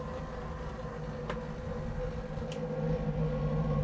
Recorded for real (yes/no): yes